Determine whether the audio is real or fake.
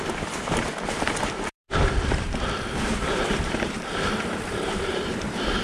fake